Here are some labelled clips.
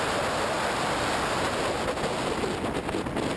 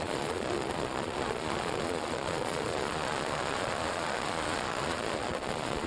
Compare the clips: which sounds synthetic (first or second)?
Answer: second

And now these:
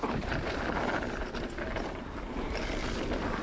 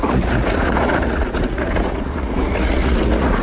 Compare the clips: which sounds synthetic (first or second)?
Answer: second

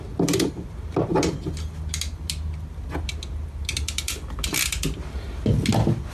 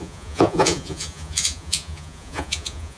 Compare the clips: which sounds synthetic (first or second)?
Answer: second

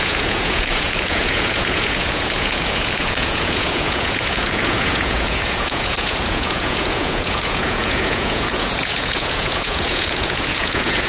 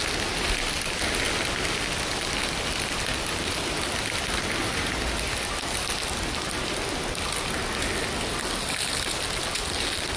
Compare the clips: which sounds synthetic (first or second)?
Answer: first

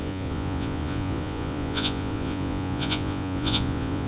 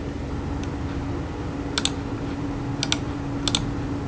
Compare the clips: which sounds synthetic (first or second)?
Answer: first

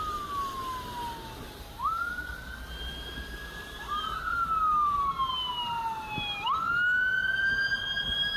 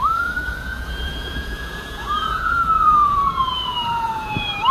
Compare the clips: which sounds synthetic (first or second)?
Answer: second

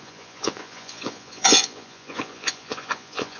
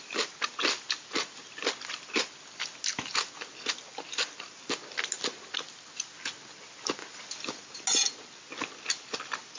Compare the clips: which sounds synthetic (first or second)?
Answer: first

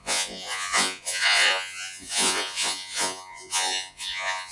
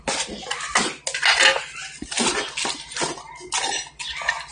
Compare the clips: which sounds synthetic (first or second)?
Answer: first